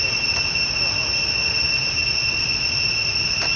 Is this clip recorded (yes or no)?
yes